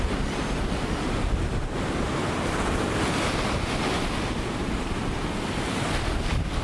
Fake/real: real